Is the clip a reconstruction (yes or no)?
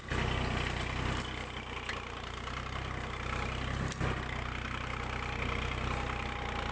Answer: no